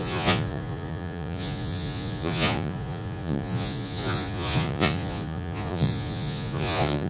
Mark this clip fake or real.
fake